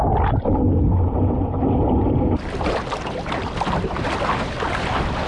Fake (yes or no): no